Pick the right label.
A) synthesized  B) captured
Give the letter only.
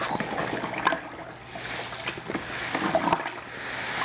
B